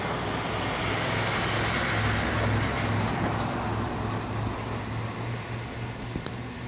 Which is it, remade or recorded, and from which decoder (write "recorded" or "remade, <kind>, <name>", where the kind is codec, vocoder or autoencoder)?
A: recorded